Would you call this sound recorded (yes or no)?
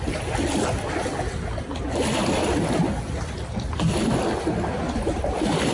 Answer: yes